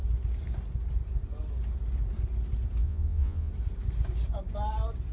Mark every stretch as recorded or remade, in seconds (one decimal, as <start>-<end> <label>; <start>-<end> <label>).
0.0-2.8 recorded; 2.8-3.5 remade; 3.5-5.1 recorded